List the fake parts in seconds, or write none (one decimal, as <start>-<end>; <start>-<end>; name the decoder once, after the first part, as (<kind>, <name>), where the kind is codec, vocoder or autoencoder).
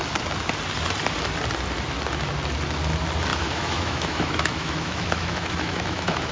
3.3-6.3 (autoencoder, DAC-VAE)